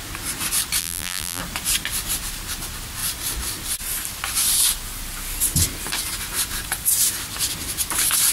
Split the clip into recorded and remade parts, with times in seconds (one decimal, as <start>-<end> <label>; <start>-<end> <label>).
0.0-0.8 recorded; 0.8-1.4 remade; 1.4-8.3 recorded